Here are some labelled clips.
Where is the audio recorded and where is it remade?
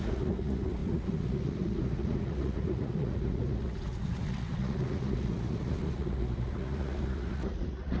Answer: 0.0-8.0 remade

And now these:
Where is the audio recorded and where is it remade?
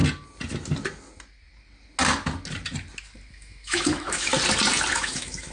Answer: 0.0-3.3 recorded; 3.3-4.3 remade; 4.3-4.9 recorded; 4.9-5.5 remade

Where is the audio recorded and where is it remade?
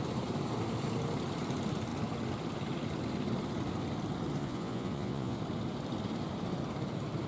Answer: 0.0-4.4 recorded; 4.4-5.4 remade; 5.4-7.3 recorded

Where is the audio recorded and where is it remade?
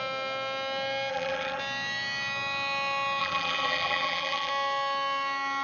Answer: 0.0-1.1 recorded; 1.1-1.6 remade; 1.6-3.2 recorded; 3.2-4.5 remade; 4.5-5.6 recorded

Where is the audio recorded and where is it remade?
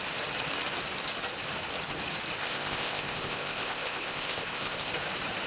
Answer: 0.0-2.4 recorded; 2.4-4.9 remade; 4.9-5.5 recorded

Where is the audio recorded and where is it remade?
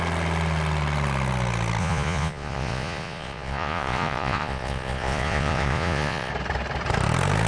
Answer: 0.0-1.8 recorded; 1.8-6.3 remade; 6.3-7.5 recorded